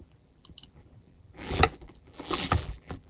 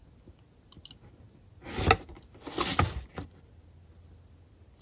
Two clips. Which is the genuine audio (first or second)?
second